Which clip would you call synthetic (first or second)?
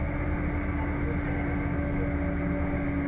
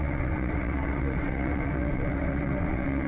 second